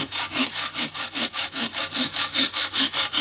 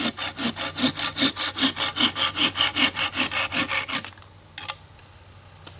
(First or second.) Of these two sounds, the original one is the second